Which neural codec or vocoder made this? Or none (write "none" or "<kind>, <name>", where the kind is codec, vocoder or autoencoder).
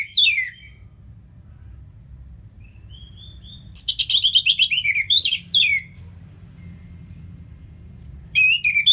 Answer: vocoder, BigVGAN v2